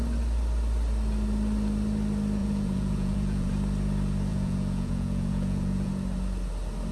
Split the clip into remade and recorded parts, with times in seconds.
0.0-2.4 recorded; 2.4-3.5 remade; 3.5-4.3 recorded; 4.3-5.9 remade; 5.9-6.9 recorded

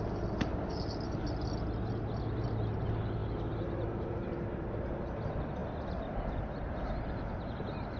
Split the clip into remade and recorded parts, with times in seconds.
0.0-8.0 recorded

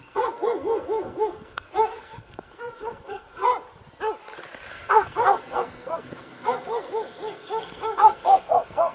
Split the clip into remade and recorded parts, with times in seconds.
0.0-3.5 remade; 3.5-4.7 recorded; 4.7-8.9 remade